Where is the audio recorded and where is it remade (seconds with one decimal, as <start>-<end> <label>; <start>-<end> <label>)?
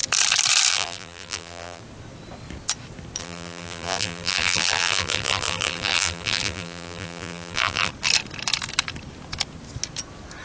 0.0-0.7 recorded; 0.7-1.8 remade; 1.8-3.2 recorded; 3.2-7.9 remade; 7.9-10.4 recorded